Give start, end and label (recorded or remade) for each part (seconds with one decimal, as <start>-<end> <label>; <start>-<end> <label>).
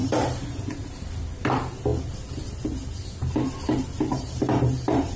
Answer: 0.0-1.0 remade; 1.0-4.1 recorded; 4.1-5.2 remade